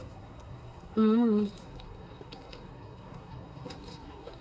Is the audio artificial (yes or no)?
yes